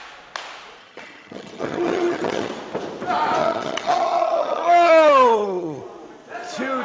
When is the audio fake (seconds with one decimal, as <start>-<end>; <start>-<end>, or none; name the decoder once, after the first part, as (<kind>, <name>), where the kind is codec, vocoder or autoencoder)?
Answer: 0.8-2.5 (vocoder, HiFi-GAN); 3.4-5.8